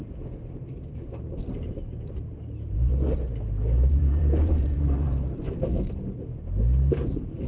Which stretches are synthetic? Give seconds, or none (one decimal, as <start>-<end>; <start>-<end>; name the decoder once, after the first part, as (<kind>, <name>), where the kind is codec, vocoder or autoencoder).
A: 0.0-2.9 (vocoder, BigVGAN v2); 3.4-5.7; 6.9-7.5